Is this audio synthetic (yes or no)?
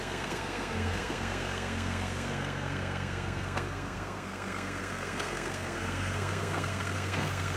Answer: yes